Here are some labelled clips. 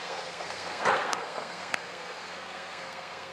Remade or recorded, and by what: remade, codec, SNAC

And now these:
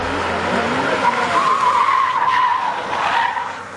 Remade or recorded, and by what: recorded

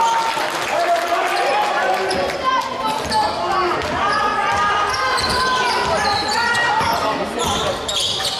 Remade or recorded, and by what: recorded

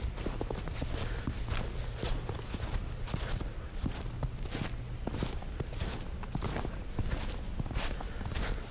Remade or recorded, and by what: recorded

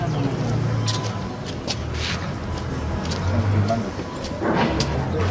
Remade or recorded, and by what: recorded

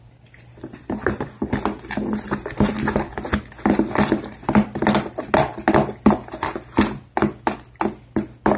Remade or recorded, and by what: recorded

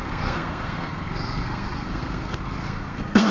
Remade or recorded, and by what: remade, codec, SNAC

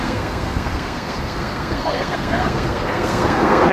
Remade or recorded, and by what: remade, codec, SNAC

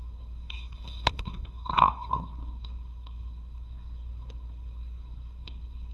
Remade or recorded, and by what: remade, codec, SNAC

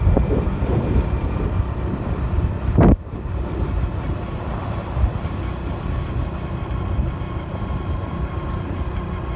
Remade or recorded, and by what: recorded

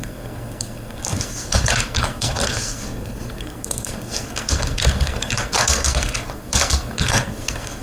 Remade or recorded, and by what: remade, codec, SNAC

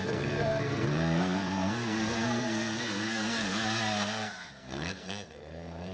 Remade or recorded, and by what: remade, codec, SNAC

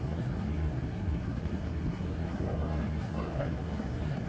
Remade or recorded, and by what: remade, codec, SNAC